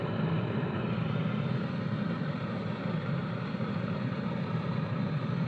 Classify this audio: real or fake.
fake